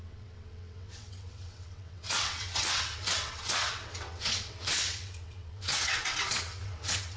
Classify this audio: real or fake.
fake